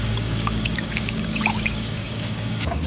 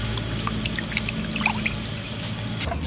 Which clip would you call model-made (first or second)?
first